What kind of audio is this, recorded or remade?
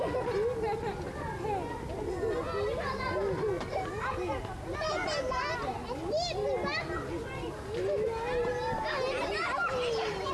recorded